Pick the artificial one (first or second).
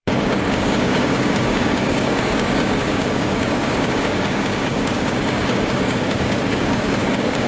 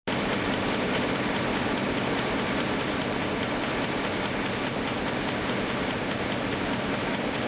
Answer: first